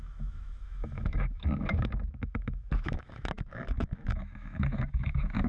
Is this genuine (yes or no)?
no